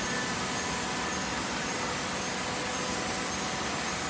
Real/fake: real